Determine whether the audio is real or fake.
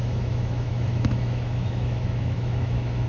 fake